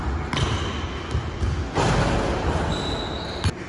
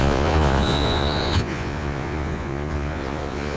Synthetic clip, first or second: second